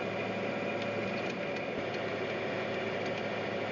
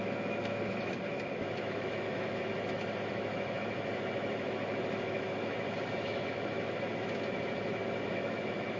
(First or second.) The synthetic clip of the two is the second